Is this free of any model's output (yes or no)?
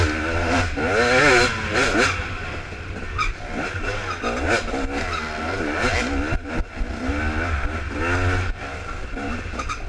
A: yes